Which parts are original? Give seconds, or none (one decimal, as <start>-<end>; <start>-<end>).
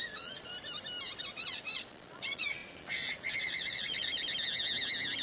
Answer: 0.5-1.2; 4.1-5.2